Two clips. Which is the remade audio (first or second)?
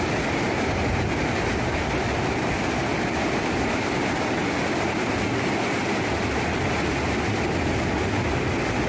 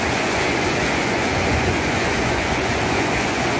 second